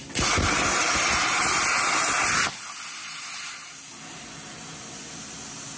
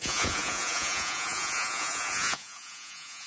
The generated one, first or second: second